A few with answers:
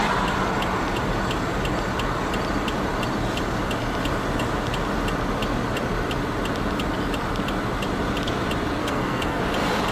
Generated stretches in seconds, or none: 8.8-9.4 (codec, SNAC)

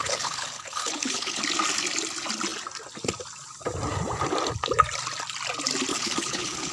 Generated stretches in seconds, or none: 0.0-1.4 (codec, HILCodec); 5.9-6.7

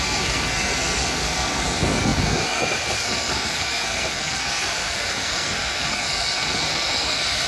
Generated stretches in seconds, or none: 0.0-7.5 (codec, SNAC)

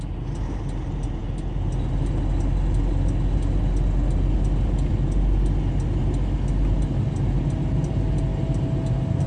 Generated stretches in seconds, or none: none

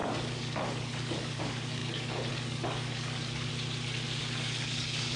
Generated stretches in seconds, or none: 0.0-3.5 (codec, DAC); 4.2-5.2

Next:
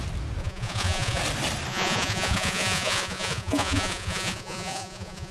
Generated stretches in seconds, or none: 0.4-1.2 (vocoder, Vocos); 1.7-5.3